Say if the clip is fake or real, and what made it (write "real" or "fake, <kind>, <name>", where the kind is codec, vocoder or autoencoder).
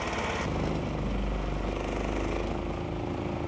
real